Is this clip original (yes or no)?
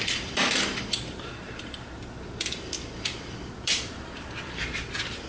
no